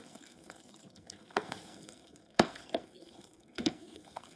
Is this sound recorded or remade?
remade